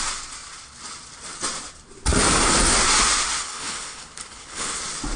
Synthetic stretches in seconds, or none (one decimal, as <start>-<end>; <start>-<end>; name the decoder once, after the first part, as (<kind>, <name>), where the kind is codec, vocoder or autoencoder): 3.4-4.8 (codec, HILCodec)